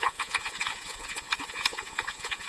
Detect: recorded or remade remade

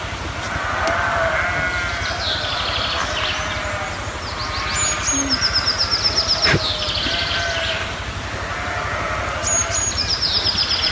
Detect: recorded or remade recorded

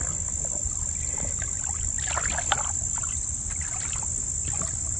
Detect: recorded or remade recorded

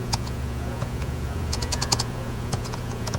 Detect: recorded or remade remade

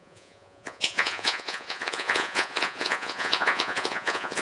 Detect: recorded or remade remade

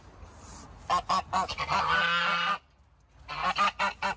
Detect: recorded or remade recorded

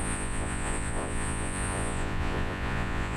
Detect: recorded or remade remade